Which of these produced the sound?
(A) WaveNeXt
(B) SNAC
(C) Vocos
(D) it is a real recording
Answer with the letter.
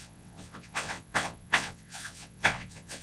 A